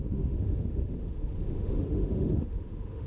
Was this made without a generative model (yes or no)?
no